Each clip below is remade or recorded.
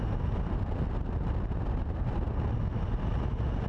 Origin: recorded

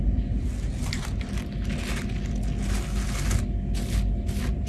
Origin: recorded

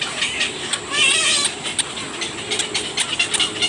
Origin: recorded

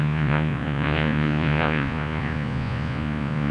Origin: remade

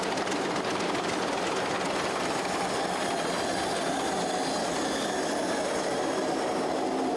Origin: recorded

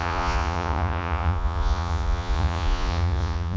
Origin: remade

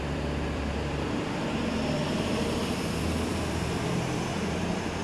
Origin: remade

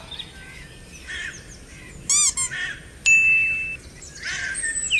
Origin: recorded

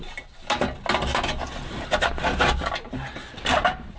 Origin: recorded